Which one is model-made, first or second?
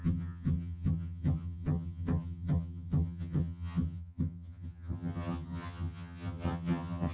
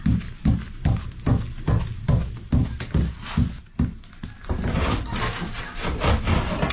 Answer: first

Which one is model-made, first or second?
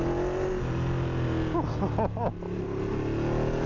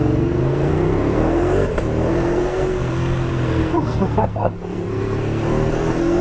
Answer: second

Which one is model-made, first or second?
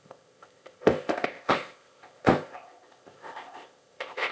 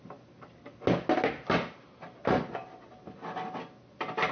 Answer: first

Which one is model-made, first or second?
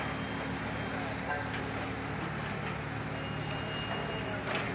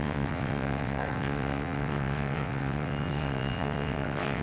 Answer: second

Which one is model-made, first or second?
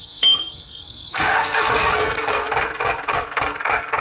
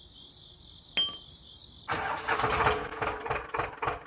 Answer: first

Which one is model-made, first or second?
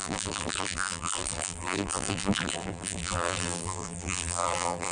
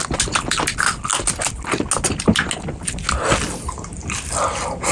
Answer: first